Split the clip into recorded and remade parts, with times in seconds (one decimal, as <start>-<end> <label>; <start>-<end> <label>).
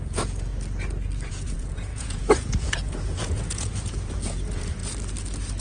0.0-0.5 remade; 0.5-1.3 recorded; 1.3-4.8 remade; 4.8-5.6 recorded